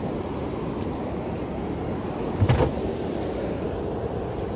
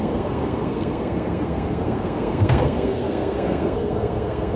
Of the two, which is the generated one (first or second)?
second